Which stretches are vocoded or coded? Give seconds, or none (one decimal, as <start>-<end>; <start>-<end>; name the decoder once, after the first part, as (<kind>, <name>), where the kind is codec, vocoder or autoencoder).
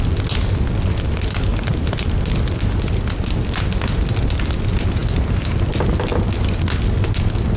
1.5-2.1 (vocoder, BigVGAN v2)